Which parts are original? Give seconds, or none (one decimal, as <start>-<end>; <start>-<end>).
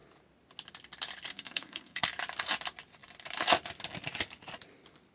0.0-1.3; 2.1-5.1